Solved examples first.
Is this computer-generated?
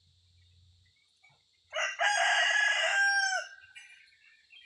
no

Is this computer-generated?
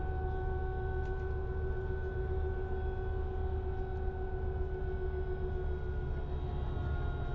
no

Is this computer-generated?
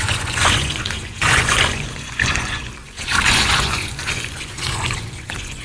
yes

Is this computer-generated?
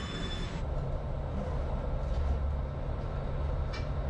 no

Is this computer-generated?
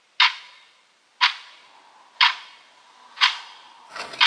no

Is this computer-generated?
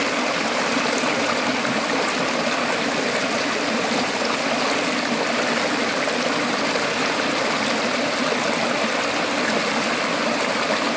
no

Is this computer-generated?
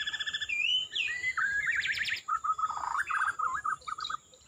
yes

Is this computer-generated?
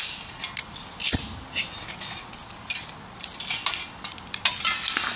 no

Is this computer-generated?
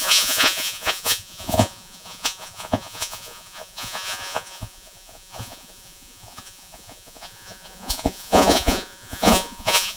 yes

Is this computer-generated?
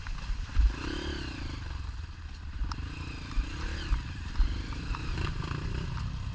no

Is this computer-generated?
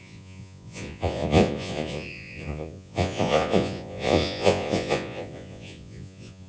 yes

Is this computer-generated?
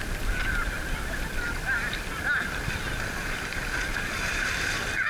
yes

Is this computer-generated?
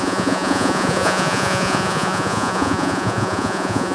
yes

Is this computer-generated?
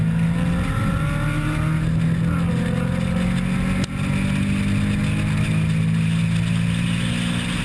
no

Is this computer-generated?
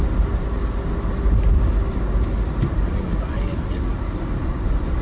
no